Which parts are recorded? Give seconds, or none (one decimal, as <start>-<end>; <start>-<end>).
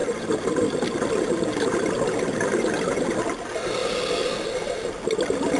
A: 0.0-5.6